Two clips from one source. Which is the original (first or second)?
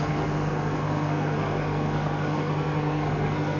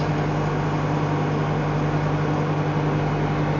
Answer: second